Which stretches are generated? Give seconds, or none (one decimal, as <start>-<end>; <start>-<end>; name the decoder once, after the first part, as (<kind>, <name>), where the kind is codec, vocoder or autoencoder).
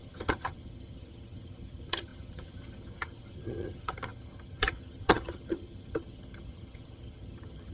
0.0-7.7 (vocoder, HiFi-GAN)